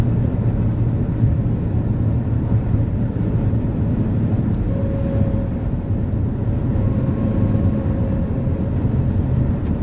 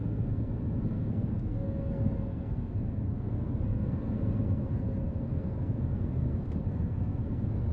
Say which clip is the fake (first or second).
second